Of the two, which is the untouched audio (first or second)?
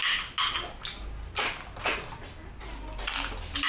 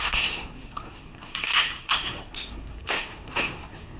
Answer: first